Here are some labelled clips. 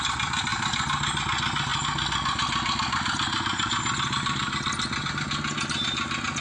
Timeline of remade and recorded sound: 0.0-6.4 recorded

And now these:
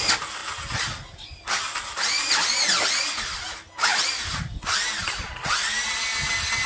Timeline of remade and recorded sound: 0.0-6.7 recorded

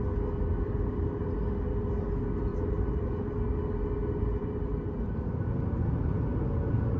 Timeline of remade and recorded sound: 0.0-2.5 recorded; 2.5-3.1 remade; 3.1-7.0 recorded

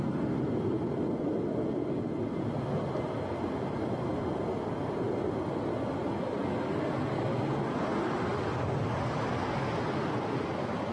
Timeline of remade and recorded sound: 0.0-10.9 recorded

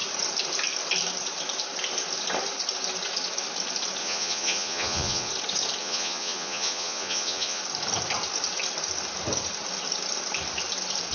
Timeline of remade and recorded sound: 0.0-4.0 recorded; 4.0-5.3 remade; 5.3-5.8 recorded; 5.8-7.6 remade; 7.6-11.1 recorded